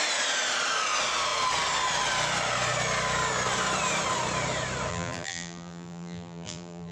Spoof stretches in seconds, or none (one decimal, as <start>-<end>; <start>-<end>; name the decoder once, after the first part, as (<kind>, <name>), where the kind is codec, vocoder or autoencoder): 4.9-6.9 (vocoder, BigVGAN v2)